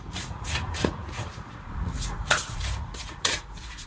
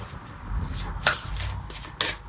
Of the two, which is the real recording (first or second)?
second